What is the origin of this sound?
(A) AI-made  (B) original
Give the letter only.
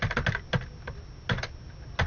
B